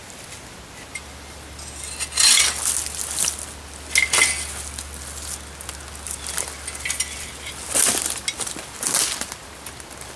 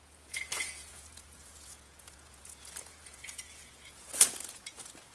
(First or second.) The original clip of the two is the first